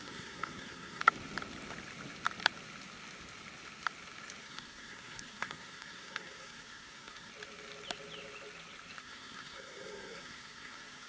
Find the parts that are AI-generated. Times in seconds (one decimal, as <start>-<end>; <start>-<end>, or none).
0.0-1.0; 4.4-7.3; 9.0-11.1